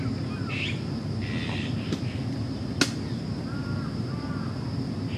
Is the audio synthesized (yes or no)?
no